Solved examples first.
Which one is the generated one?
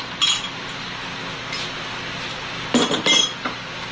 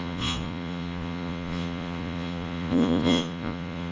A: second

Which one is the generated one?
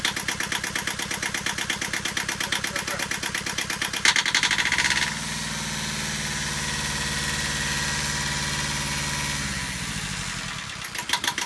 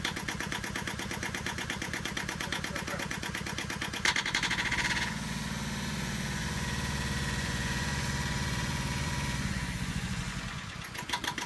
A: second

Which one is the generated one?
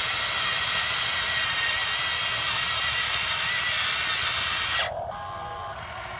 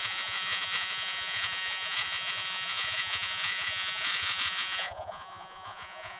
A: second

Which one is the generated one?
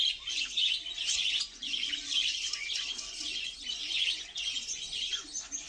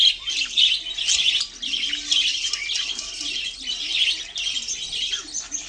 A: first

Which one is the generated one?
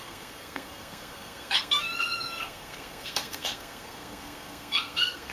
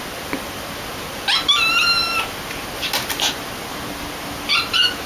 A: first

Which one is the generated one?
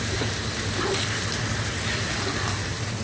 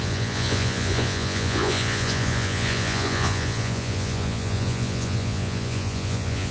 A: second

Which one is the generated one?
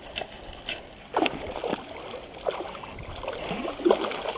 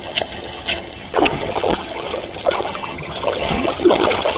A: second